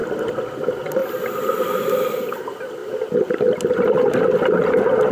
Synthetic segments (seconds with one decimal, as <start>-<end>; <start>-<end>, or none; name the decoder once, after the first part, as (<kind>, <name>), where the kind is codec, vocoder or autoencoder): none